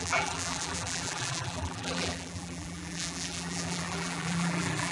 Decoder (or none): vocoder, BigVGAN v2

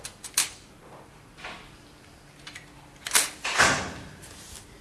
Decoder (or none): vocoder, BigVGAN v2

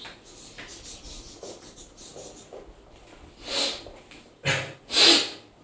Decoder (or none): none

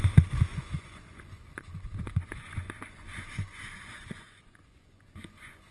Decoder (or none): vocoder, Vocos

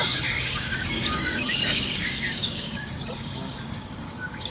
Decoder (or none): codec, DAC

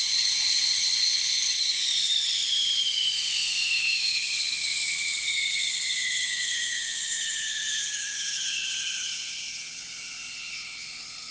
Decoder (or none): codec, HILCodec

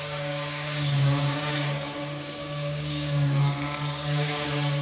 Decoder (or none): codec, DAC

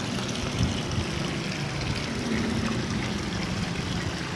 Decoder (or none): none